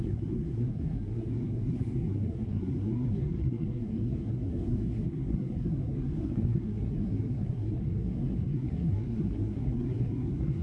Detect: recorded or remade remade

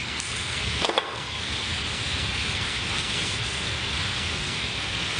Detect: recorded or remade remade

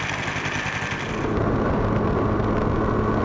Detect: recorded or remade recorded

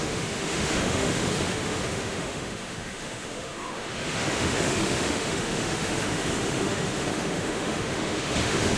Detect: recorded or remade remade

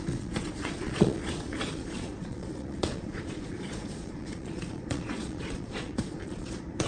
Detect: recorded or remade remade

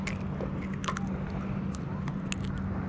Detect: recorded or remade recorded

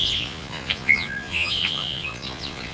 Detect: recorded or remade remade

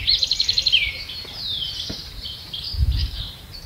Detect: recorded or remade remade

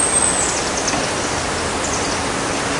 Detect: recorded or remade recorded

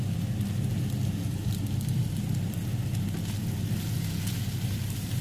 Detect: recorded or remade recorded